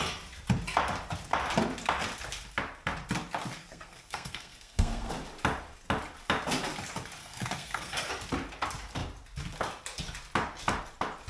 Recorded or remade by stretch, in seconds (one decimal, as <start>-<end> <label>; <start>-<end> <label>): 0.0-3.6 recorded; 3.6-5.1 remade; 5.1-7.2 recorded; 7.2-8.1 remade; 8.1-11.3 recorded